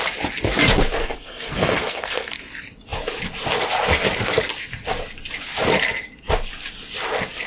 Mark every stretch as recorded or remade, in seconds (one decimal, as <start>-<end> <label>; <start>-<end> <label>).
0.0-1.0 recorded; 1.0-2.3 remade; 2.3-7.5 recorded